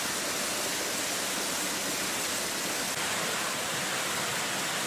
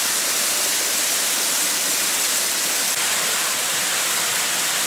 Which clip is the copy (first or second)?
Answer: second